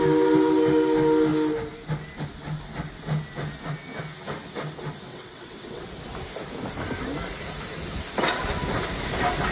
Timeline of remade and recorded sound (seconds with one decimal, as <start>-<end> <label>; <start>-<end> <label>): 0.0-5.1 recorded; 5.1-5.9 remade; 5.9-9.5 recorded